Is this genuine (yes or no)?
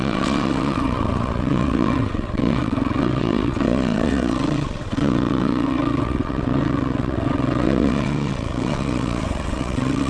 no